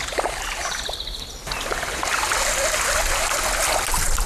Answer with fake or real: real